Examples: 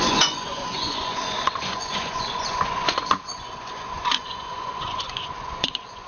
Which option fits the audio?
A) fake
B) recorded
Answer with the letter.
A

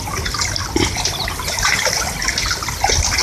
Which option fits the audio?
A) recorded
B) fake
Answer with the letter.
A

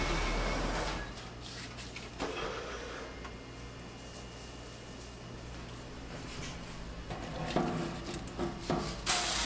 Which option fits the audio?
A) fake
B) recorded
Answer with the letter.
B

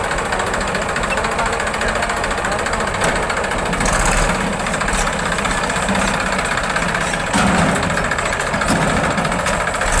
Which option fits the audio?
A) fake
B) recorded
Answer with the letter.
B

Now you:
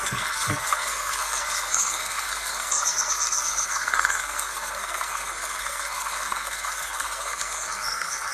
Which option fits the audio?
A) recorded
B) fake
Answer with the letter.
B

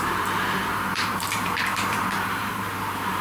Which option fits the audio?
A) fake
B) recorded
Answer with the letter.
A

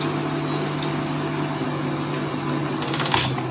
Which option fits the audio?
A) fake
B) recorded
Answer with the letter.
B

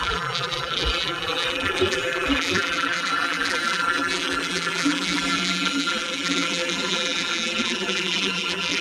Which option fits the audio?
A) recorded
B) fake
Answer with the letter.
B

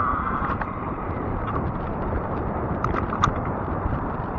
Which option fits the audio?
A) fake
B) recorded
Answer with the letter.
A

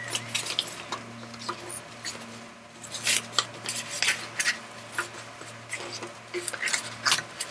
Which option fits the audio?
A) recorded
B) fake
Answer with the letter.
A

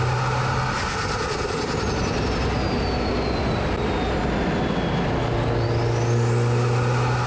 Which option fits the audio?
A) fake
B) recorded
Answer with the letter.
B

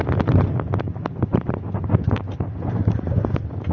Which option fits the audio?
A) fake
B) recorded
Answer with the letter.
B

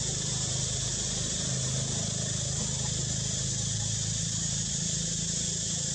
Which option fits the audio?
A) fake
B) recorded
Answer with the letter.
B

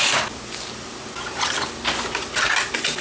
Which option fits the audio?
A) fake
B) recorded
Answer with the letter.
B